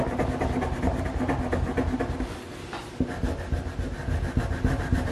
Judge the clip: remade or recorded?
recorded